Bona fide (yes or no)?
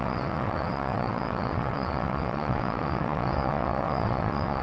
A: no